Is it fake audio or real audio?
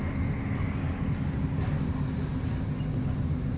real